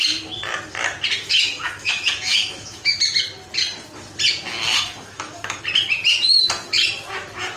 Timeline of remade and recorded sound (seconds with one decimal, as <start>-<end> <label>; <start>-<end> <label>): 0.0-1.2 recorded; 1.2-3.0 remade; 3.0-4.7 recorded; 4.7-5.6 remade; 5.6-7.6 recorded